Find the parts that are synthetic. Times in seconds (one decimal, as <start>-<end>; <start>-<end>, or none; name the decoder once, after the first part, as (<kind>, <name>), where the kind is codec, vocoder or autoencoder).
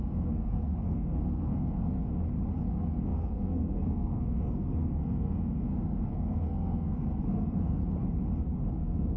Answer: 0.0-2.1 (codec, SNAC); 2.7-7.8; 8.7-9.2